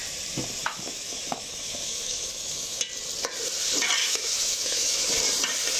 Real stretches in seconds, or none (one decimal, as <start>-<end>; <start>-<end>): 0.0-0.6; 2.8-4.0; 5.1-5.8